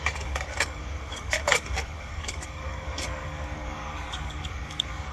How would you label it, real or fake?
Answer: fake